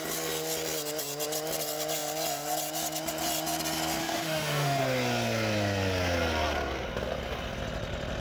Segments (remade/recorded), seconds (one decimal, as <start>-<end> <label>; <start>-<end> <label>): 0.0-4.0 recorded; 4.0-4.8 remade; 4.8-8.2 recorded